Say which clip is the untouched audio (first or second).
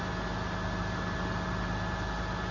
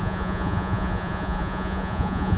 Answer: first